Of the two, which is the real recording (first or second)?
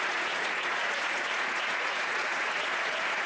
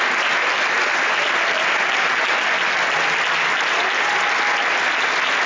second